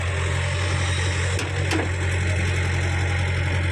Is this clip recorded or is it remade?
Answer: recorded